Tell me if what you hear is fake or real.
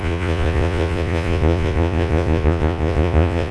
fake